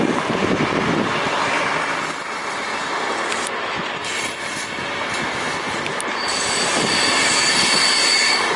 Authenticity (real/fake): real